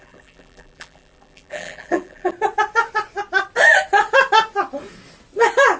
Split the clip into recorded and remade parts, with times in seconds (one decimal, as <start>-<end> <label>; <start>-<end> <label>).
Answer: 0.0-2.3 remade; 2.3-5.8 recorded